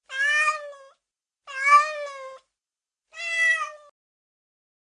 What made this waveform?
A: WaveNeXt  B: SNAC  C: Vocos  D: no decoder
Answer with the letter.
D